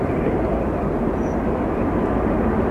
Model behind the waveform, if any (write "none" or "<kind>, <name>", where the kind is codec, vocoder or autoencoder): vocoder, BigVGAN v2